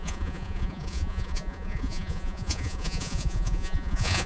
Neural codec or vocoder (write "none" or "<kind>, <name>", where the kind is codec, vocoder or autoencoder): vocoder, Vocos